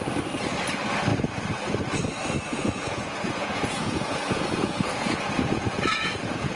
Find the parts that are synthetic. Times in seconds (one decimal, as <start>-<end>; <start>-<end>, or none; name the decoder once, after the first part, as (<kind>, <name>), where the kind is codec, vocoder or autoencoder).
2.5-6.6 (vocoder, Vocos)